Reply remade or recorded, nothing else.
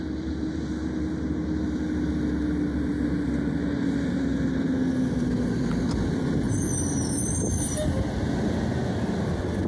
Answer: recorded